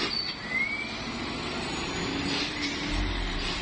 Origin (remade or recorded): recorded